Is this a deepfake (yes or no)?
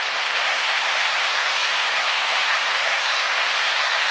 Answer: yes